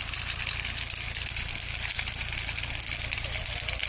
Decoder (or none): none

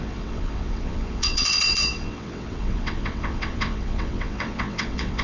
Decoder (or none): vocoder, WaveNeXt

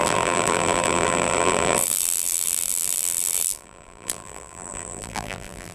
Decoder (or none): vocoder, BigVGAN v2